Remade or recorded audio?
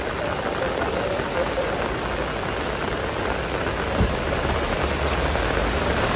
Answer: recorded